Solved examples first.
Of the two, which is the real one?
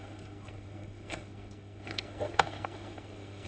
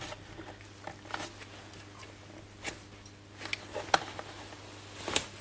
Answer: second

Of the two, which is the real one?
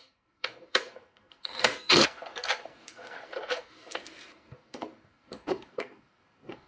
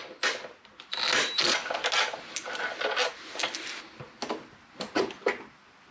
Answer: second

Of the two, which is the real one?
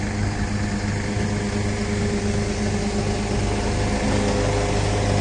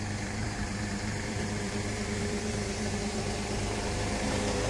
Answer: first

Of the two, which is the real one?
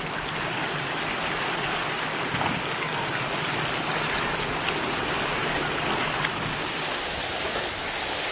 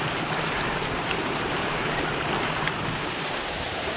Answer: first